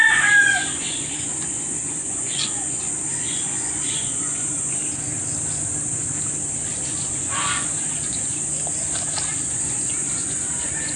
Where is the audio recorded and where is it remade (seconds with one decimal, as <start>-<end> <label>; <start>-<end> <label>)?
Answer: 0.0-4.7 remade; 4.7-6.7 recorded; 6.7-8.7 remade; 8.7-9.3 recorded; 9.3-11.0 remade